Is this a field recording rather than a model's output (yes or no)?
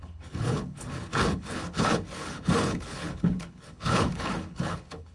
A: no